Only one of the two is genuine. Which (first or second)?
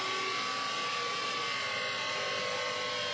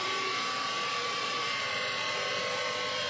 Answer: first